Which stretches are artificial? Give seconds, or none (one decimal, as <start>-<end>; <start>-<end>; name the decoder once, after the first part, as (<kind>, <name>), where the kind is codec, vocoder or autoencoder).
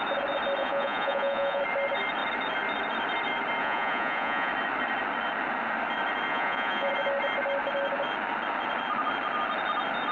0.6-1.6 (vocoder, Vocos); 3.6-4.5; 6.3-6.9